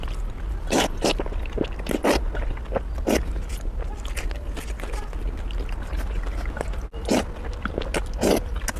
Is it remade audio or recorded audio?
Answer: recorded